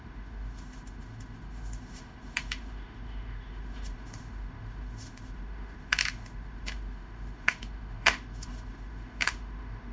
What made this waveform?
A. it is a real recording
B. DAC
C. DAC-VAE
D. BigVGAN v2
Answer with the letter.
C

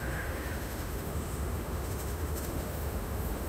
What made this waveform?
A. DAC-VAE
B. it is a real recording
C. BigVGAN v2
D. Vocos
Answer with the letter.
A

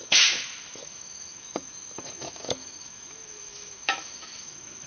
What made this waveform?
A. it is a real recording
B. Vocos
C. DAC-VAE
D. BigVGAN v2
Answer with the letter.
C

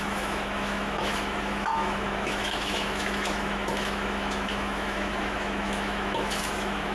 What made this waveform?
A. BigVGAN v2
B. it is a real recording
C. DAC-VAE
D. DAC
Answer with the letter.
C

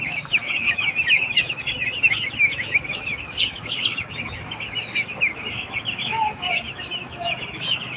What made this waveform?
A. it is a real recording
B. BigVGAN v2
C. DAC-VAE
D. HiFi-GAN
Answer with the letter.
C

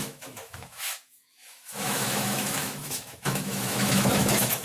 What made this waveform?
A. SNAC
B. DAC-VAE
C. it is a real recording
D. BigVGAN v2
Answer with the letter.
B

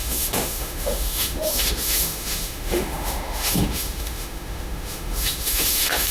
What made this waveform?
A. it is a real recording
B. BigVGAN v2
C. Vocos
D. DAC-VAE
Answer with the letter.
D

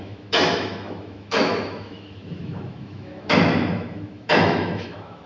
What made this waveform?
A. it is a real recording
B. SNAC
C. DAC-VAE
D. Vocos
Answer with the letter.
C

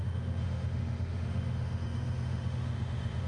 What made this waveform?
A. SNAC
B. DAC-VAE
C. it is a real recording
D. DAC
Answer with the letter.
B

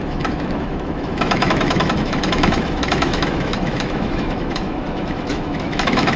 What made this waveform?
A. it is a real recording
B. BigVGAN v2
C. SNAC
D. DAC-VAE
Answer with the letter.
D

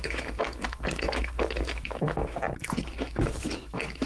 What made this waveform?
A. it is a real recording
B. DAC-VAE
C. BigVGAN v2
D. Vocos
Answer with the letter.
B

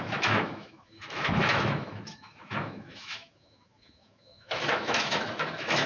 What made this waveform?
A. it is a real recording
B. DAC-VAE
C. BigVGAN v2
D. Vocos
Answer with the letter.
B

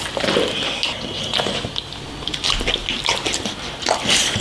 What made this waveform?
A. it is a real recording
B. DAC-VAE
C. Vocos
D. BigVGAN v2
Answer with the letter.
A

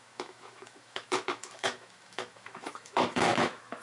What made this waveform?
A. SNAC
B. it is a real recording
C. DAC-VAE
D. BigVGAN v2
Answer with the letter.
C